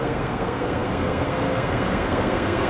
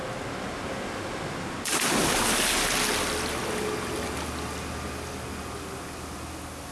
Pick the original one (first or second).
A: second